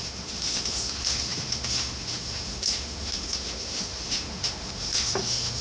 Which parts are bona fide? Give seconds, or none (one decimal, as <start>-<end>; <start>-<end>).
none